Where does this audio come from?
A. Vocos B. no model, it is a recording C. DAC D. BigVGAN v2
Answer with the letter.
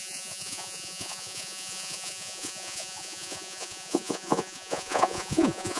A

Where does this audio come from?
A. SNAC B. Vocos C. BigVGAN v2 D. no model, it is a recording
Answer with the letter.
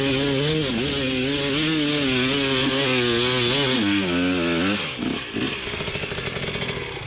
D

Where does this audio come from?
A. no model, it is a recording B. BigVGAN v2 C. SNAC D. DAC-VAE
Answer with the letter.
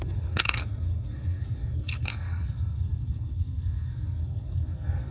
C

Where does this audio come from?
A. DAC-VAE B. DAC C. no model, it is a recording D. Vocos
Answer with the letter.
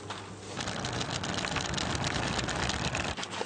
C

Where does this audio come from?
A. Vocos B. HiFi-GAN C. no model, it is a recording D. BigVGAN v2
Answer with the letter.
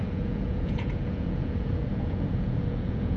A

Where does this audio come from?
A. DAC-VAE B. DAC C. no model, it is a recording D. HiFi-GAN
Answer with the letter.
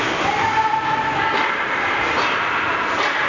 C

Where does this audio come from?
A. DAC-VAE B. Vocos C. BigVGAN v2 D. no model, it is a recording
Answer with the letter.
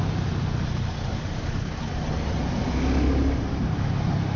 D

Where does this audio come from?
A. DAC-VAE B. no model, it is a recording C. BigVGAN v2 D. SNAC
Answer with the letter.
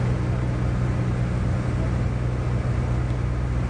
B